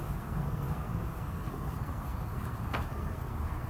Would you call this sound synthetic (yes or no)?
yes